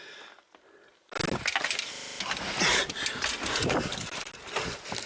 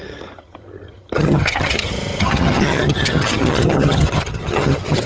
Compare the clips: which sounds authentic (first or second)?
first